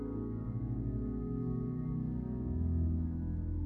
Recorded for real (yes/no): no